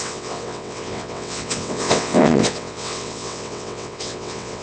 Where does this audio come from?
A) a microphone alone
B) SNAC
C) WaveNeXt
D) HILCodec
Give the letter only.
C